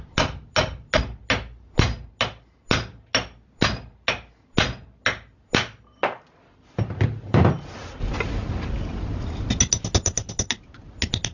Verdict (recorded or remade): recorded